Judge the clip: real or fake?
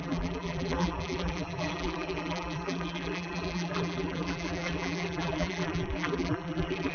fake